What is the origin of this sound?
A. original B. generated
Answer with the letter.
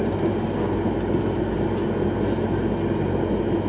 A